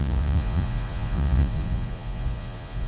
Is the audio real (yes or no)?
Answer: no